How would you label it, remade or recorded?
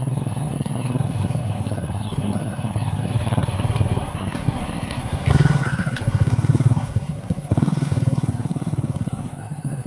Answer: remade